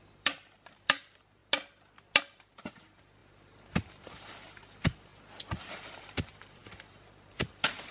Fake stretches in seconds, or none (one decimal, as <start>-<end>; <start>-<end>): 0.0-1.4; 2.2-5.1; 5.6-7.9